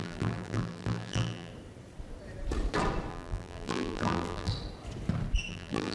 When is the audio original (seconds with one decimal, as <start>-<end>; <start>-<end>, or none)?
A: 1.5-3.1; 4.5-5.5